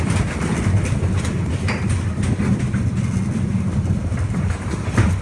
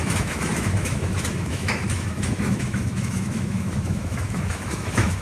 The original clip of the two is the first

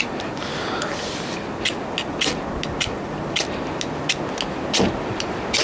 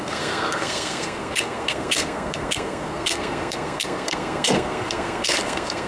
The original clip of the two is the first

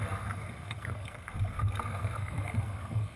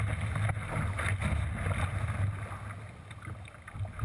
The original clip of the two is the second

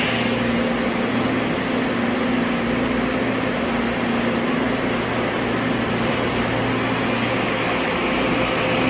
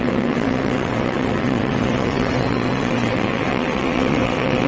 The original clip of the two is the first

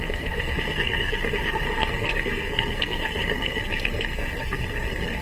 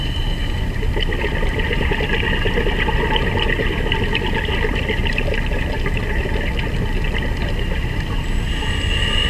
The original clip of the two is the second